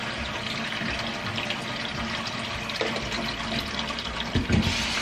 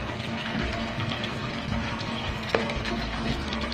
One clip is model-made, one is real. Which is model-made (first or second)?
second